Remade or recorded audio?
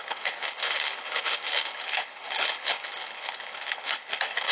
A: remade